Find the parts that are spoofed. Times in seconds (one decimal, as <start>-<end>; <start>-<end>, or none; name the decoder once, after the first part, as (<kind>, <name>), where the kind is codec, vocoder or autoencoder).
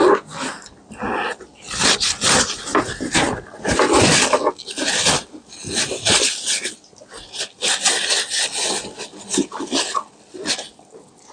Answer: none